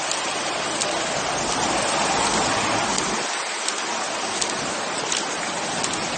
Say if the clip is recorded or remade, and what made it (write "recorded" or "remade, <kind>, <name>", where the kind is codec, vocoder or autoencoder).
recorded